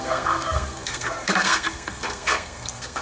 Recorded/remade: remade